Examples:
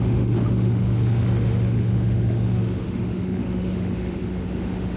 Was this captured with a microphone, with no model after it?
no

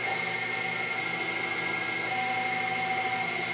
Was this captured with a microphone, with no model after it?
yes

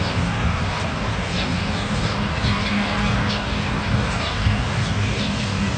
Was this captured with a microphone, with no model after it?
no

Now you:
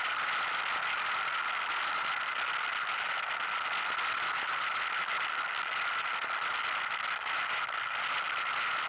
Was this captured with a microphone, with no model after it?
yes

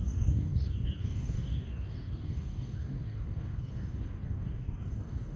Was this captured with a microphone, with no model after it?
no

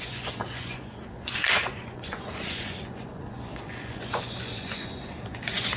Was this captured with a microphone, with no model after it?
no